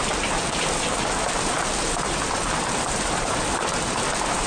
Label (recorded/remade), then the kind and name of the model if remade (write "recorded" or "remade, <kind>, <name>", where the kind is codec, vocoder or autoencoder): recorded